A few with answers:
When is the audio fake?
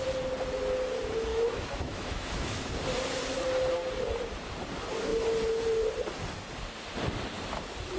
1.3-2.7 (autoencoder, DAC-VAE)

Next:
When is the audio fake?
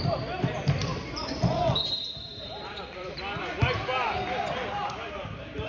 0.9-1.6 (vocoder, BigVGAN v2); 2.3-5.3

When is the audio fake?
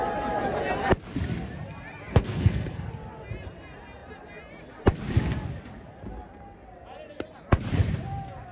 2.1-2.9 (codec, SNAC)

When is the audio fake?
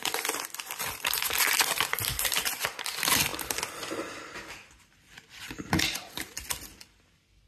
none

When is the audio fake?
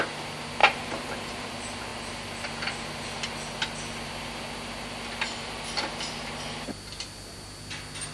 0.6-1.5 (vocoder, BigVGAN v2)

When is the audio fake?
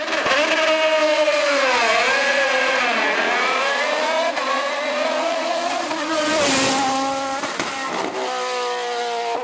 1.1-6.3 (vocoder, Vocos)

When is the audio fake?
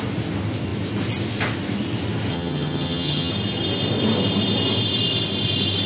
2.3-3.3 (vocoder, HiFi-GAN)